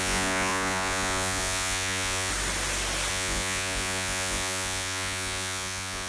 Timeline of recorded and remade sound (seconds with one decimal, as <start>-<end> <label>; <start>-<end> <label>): 0.0-2.3 remade; 2.3-3.1 recorded; 3.1-6.1 remade